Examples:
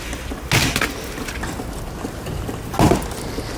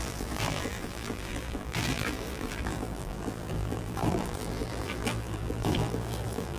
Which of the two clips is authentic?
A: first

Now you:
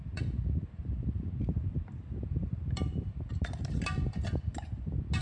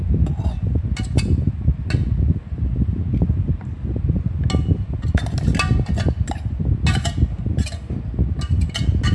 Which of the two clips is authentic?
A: second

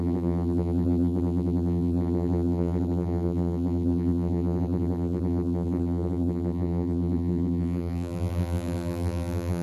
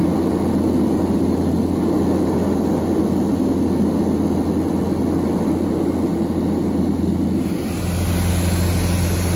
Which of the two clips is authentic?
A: second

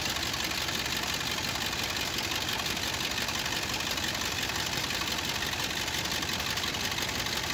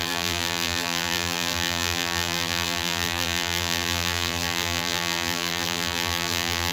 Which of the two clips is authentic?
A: first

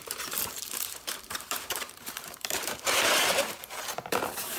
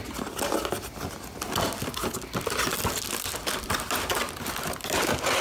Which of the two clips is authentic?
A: second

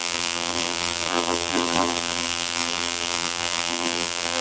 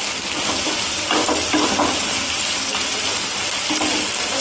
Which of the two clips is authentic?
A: second